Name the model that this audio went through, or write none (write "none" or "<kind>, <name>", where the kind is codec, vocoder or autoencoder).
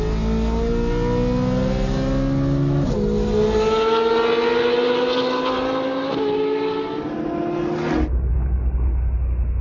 none